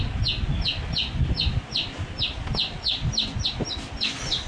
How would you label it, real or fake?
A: real